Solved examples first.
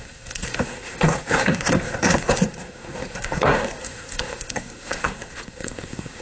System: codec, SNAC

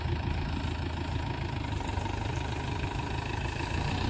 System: none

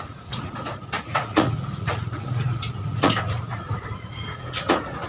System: vocoder, Vocos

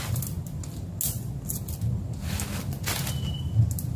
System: none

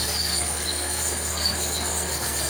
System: codec, SNAC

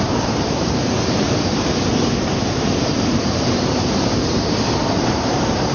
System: vocoder, BigVGAN v2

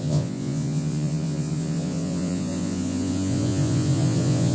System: vocoder, Vocos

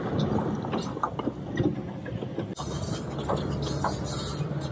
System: none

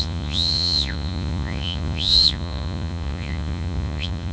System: vocoder, Vocos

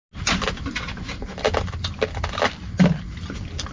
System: none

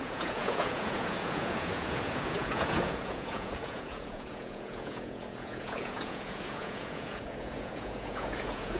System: vocoder, Vocos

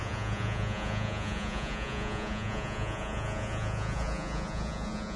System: vocoder, Vocos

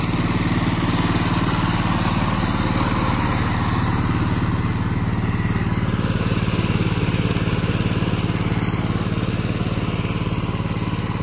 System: none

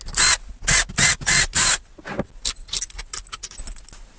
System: none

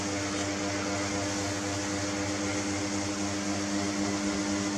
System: none